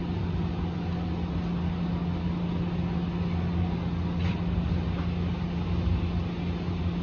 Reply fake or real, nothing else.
real